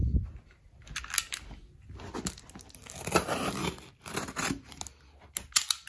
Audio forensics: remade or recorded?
recorded